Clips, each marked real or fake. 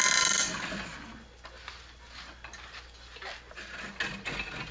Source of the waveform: real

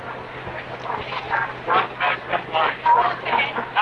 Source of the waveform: real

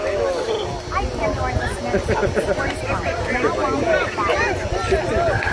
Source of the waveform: real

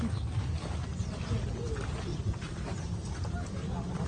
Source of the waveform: real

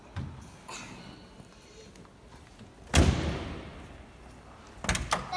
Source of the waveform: real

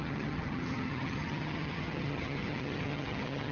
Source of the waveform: fake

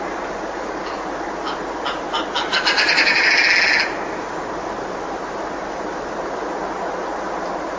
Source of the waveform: real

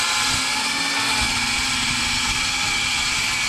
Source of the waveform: real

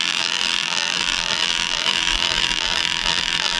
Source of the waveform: fake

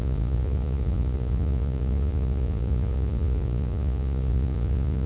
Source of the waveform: fake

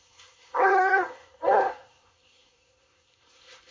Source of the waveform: fake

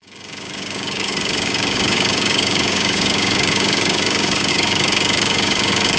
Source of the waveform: fake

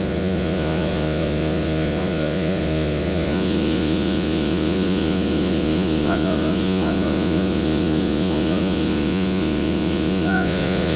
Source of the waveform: fake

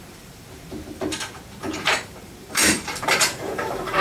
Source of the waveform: fake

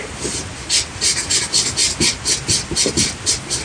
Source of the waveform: real